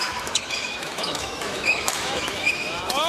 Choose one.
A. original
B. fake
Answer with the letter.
B